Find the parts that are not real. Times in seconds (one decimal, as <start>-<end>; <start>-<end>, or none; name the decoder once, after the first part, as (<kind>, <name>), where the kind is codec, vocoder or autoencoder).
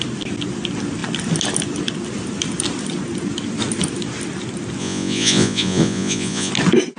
4.8-6.5 (vocoder, Vocos)